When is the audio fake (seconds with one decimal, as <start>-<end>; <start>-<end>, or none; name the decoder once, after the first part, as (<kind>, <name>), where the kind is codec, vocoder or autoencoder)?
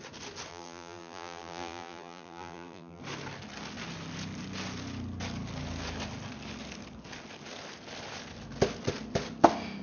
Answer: 0.5-3.0 (vocoder, BigVGAN v2)